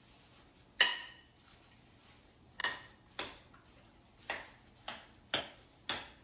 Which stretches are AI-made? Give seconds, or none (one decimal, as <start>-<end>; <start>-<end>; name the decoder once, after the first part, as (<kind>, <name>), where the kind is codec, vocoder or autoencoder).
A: none